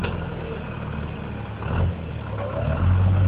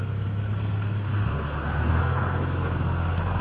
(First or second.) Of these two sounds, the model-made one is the second